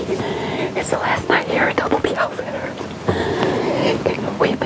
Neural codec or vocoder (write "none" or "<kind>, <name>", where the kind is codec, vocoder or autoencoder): none